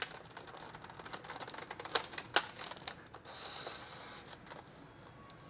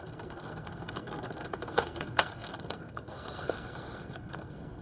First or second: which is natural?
first